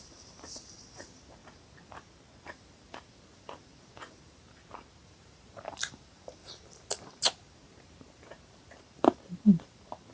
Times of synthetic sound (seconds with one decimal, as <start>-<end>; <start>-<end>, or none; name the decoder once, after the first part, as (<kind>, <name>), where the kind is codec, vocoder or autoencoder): 0.0-1.4 (vocoder, BigVGAN v2); 2.4-10.1